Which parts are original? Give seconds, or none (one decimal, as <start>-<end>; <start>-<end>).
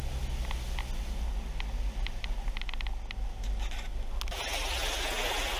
0.0-5.6